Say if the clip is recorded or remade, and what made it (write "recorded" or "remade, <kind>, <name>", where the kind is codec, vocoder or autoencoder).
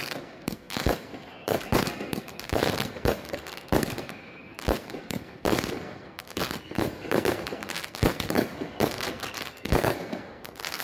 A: remade, codec, SNAC